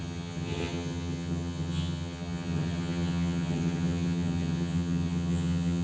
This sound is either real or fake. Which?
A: fake